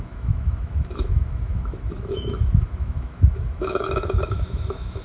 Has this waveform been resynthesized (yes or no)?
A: yes